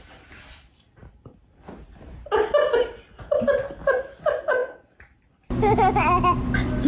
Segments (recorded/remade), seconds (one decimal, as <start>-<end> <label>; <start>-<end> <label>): 0.0-6.9 recorded